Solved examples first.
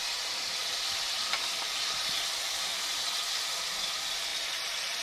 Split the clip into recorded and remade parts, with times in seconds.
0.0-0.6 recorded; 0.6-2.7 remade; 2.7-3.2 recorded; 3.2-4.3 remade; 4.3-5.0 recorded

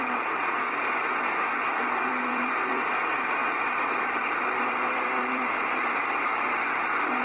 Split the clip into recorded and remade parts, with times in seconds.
0.0-6.3 remade; 6.3-7.2 recorded

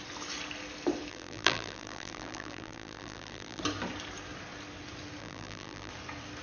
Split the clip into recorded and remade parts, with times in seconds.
0.0-1.1 recorded; 1.1-3.6 remade; 3.6-5.2 recorded; 5.2-5.9 remade; 5.9-6.4 recorded

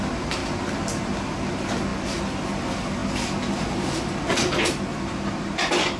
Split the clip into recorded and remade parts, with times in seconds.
0.0-4.9 recorded; 4.9-5.5 remade; 5.5-6.0 recorded

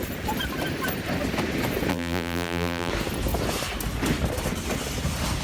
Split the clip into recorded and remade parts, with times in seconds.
0.0-1.9 recorded; 1.9-2.9 remade; 2.9-5.4 recorded

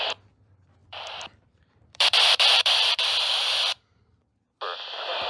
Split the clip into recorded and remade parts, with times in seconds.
0.0-0.8 recorded; 0.8-4.0 remade; 4.0-5.3 recorded

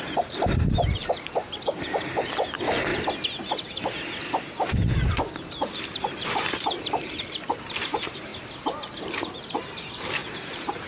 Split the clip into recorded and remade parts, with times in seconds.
0.0-2.9 remade; 2.9-5.1 recorded; 5.1-8.3 remade; 8.3-9.0 recorded; 9.0-10.9 remade

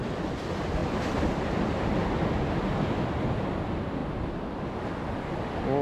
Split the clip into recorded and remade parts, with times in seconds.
0.0-5.8 recorded